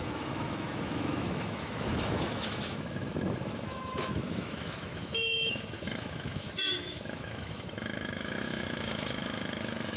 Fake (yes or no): yes